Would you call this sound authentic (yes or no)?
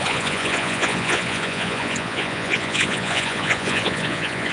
no